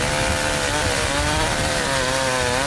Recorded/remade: recorded